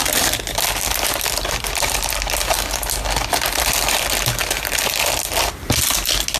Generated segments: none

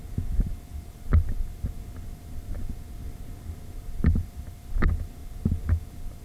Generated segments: none

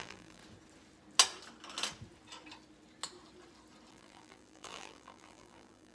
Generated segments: 0.0-0.4; 3.9-5.9

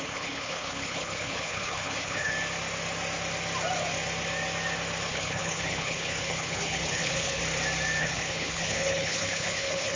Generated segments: 0.0-2.3; 5.0-7.4; 8.0-10.0

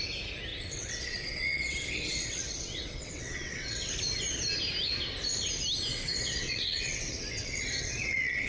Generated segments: 0.5-3.9; 5.9-8.5

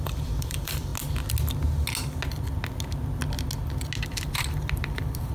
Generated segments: 0.0-0.9; 4.0-5.3

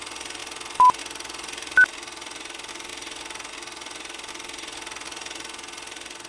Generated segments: none